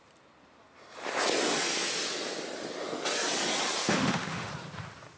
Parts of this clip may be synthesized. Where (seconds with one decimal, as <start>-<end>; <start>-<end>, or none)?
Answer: 3.8-4.5